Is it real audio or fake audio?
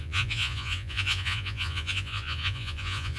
fake